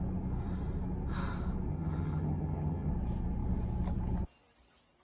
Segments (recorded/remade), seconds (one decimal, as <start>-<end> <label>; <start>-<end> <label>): 0.0-1.7 recorded; 1.7-2.9 remade; 2.9-5.0 recorded